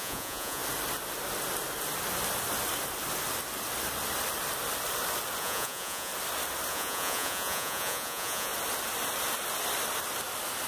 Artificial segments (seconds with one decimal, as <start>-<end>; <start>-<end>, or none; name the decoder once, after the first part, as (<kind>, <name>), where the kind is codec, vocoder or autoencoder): 0.0-0.6 (vocoder, Vocos); 5.4-6.1; 6.7-8.5